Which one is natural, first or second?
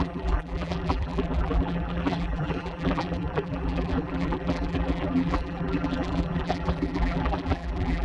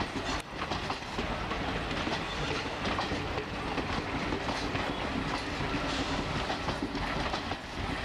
second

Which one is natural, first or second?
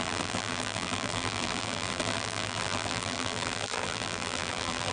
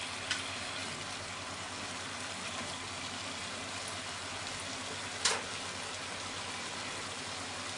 second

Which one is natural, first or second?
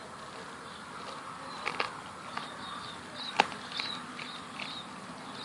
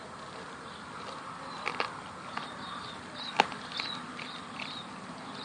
first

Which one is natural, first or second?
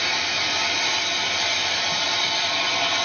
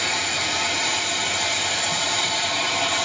first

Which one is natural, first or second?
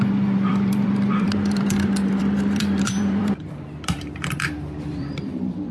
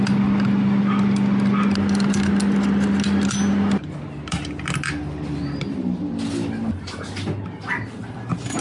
second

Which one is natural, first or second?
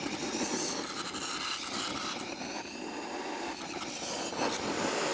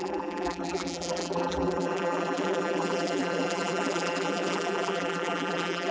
first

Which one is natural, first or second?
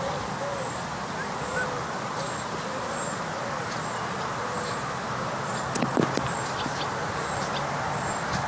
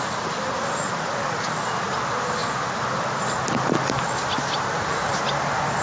second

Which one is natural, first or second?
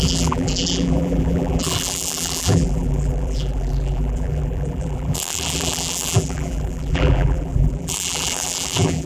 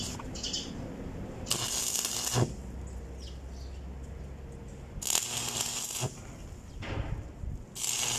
second